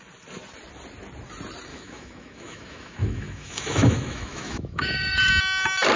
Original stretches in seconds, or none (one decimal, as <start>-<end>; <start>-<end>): 0.0-1.7; 5.3-6.0